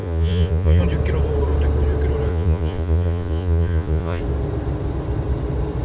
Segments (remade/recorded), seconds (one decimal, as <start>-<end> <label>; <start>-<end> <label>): 0.0-0.8 remade; 0.8-2.3 recorded; 2.3-4.2 remade; 4.2-5.8 recorded